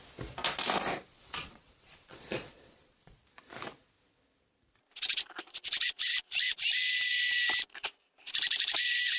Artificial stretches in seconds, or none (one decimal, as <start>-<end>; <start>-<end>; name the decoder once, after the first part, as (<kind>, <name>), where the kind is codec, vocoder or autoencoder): 1.1-3.2 (vocoder, Vocos)